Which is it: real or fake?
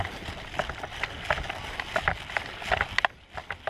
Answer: real